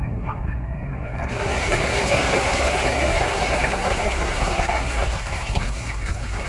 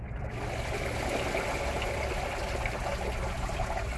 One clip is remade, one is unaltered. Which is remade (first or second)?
first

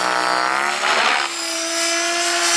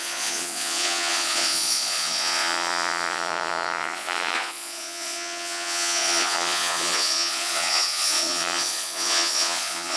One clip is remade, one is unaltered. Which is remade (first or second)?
second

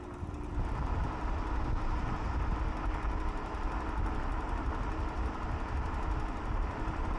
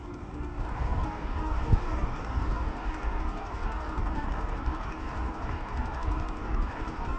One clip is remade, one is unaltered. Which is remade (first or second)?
second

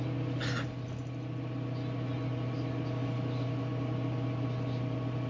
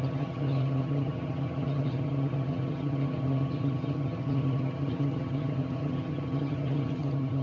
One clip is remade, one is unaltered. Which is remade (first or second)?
second